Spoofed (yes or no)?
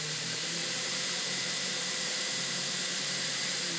yes